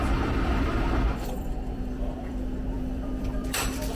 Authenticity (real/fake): fake